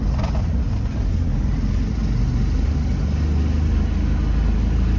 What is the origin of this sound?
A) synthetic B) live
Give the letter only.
B